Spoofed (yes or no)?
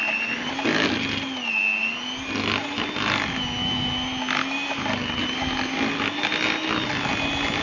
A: no